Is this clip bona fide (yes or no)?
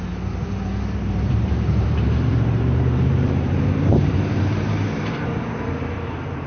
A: no